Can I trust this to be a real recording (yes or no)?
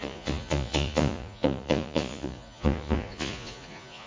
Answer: no